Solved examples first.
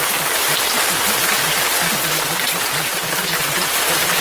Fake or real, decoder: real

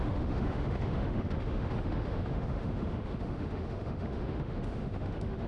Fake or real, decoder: fake, autoencoder, DAC-VAE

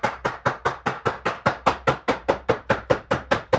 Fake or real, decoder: fake, vocoder, BigVGAN v2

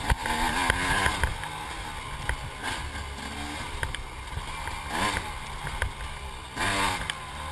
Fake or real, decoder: real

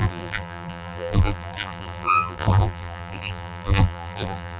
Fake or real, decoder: fake, vocoder, BigVGAN v2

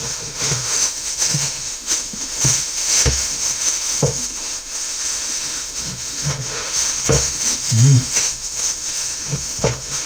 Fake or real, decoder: fake, autoencoder, DAC-VAE